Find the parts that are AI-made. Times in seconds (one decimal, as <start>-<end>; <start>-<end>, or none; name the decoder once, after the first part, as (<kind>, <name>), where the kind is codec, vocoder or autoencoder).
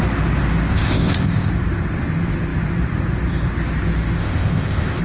0.7-1.5 (codec, ZipCodec); 4.2-5.0